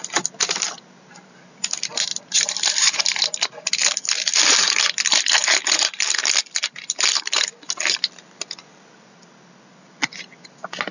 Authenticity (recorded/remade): recorded